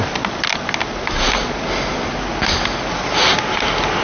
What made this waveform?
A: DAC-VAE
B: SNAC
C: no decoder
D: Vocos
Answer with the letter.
C